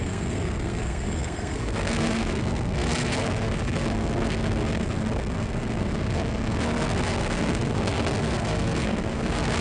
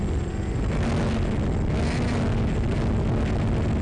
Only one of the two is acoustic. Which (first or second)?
second